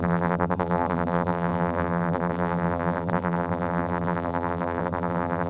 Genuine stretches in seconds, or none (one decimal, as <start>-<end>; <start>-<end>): none